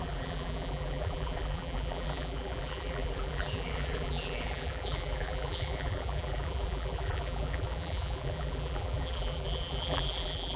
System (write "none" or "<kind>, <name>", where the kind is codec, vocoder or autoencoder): vocoder, BigVGAN v2